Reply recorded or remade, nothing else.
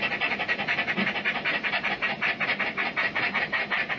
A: recorded